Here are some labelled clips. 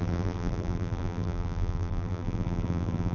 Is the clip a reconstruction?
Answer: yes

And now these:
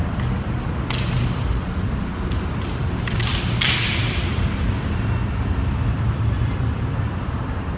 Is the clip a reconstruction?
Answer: yes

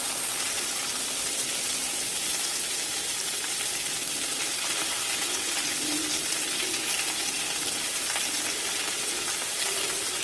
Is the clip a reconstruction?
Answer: yes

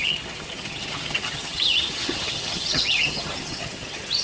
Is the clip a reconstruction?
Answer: yes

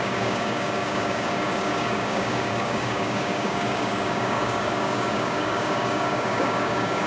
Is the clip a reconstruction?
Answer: yes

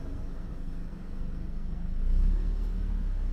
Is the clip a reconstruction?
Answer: yes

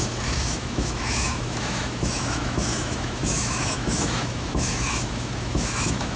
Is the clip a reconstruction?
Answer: yes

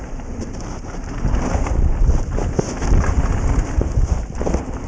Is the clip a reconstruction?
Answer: no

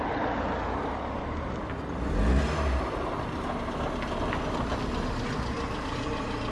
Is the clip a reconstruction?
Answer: no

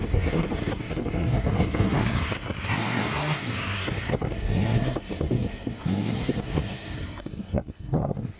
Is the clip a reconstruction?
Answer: yes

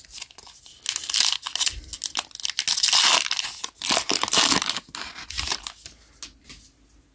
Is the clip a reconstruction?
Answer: no